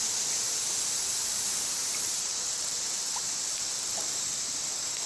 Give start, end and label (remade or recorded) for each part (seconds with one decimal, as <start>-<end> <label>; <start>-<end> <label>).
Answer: 0.0-1.2 recorded; 1.2-4.3 remade; 4.3-5.1 recorded

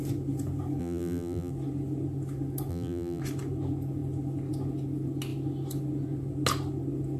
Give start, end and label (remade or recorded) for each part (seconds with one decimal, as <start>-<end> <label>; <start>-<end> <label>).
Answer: 0.0-0.8 recorded; 0.8-1.5 remade; 1.5-2.7 recorded; 2.7-3.2 remade; 3.2-7.2 recorded

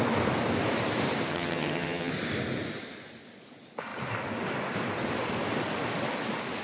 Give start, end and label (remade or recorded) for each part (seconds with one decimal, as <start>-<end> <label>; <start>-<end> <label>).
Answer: 0.0-1.3 recorded; 1.3-2.1 remade; 2.1-6.6 recorded